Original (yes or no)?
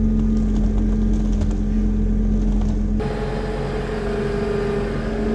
yes